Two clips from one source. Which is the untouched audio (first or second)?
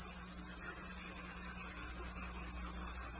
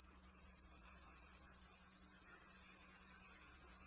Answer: first